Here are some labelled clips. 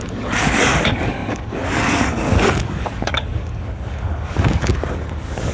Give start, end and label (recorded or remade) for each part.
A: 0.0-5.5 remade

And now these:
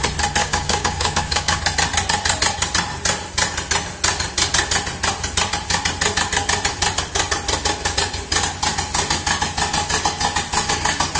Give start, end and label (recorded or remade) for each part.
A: 0.0-0.4 recorded; 0.4-1.6 remade; 1.6-11.2 recorded

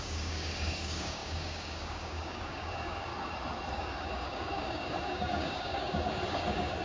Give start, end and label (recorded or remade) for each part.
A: 0.0-3.1 remade; 3.1-3.7 recorded; 3.7-6.8 remade